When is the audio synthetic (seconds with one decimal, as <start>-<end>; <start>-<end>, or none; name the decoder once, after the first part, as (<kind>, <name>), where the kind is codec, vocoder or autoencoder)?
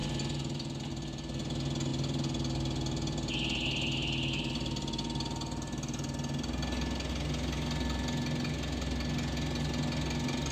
none